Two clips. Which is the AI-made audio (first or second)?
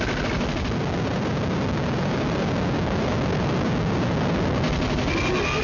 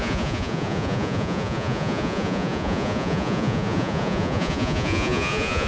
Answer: second